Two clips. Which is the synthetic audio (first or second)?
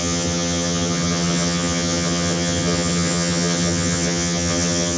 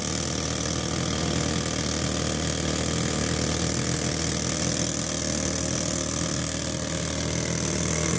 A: first